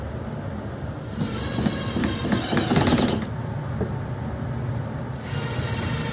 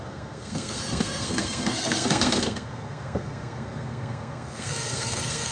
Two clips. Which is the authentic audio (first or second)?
first